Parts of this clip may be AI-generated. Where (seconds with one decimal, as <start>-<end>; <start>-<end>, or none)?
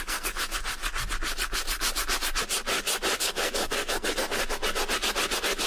0.0-0.8; 3.2-4.4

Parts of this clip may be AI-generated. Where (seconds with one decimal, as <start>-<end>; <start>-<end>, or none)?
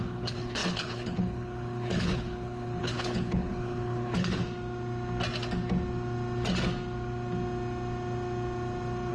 0.0-4.4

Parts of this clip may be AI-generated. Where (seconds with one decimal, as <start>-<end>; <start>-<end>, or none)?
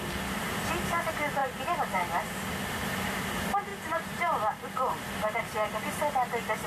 none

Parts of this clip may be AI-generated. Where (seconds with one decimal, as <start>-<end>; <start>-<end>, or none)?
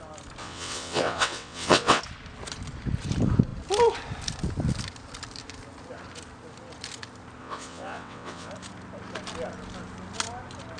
0.4-2.0; 7.4-8.5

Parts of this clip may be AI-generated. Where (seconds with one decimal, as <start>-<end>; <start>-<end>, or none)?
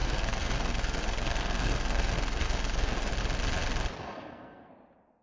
0.0-3.1; 4.0-4.7